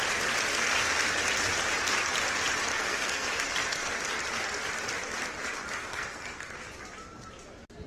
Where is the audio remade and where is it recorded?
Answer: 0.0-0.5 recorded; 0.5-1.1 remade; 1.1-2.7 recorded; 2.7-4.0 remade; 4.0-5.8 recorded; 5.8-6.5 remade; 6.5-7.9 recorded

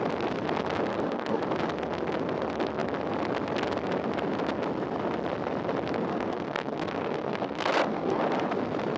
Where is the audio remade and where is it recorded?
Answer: 0.0-0.9 recorded; 0.9-1.4 remade; 1.4-6.1 recorded; 6.1-8.2 remade; 8.2-9.0 recorded

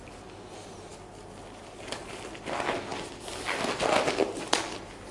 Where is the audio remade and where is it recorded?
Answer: 0.0-5.1 recorded

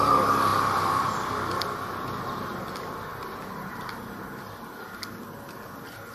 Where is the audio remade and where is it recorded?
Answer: 0.0-0.5 recorded; 0.5-1.2 remade; 1.2-6.1 recorded

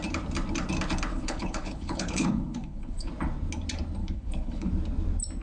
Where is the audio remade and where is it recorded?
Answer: 0.0-1.1 recorded; 1.1-3.1 remade; 3.1-4.0 recorded; 4.0-4.7 remade; 4.7-5.4 recorded

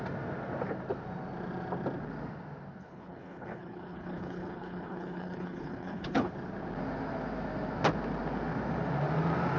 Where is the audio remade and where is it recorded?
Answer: 0.0-2.8 recorded; 2.8-6.3 remade; 6.3-9.6 recorded

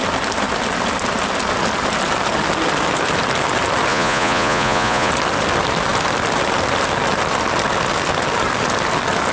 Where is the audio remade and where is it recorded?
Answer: 0.0-3.9 recorded; 3.9-5.1 remade; 5.1-9.3 recorded

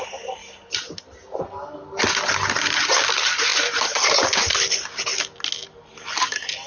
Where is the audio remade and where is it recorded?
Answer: 0.0-3.5 recorded; 3.5-4.5 remade; 4.5-6.7 recorded